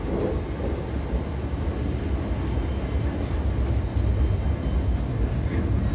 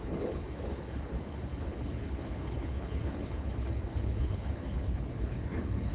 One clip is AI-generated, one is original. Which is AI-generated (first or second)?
second